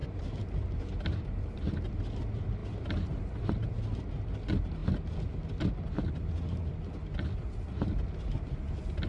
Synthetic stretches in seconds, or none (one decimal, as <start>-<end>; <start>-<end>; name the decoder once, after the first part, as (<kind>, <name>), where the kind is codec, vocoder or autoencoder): 0.0-1.6 (vocoder, BigVGAN v2); 2.6-3.5